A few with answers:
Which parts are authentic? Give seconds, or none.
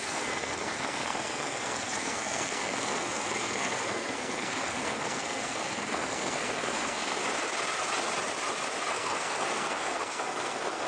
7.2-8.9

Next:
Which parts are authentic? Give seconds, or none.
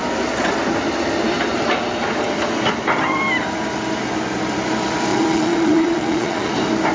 0.0-5.1; 6.5-6.9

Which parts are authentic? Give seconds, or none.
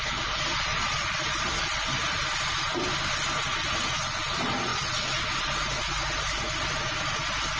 0.0-0.7; 2.9-7.6